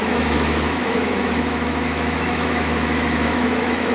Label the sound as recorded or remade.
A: remade